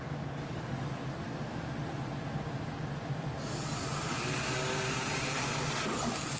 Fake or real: real